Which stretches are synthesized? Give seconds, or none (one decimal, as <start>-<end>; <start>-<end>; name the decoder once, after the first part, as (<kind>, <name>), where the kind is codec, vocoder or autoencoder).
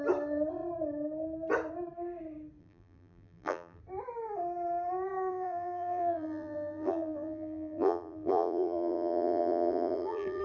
2.6-3.8 (vocoder, BigVGAN v2); 5.3-10.4